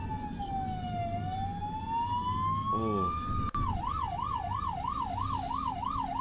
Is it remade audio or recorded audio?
recorded